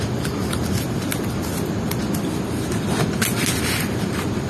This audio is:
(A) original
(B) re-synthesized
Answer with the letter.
A